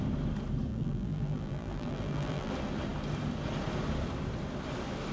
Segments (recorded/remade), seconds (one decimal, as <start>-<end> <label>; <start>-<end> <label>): 0.0-0.7 recorded; 0.7-2.5 remade; 2.5-5.1 recorded